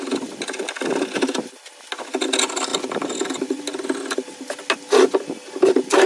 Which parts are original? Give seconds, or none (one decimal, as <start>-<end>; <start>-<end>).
0.0-2.7; 3.6-6.1